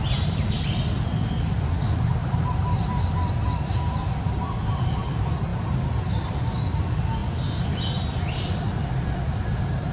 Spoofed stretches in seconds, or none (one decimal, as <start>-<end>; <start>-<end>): none